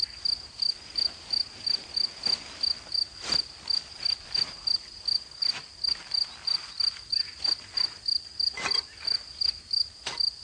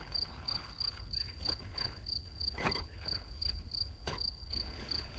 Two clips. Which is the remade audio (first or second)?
second